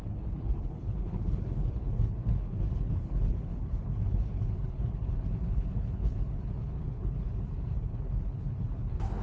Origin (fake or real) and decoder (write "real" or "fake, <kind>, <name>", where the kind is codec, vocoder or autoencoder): fake, codec, HILCodec